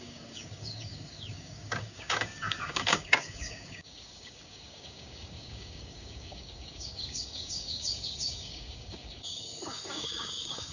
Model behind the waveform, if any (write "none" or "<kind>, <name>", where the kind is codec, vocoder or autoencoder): codec, DAC